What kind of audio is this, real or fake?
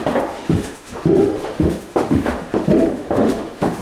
fake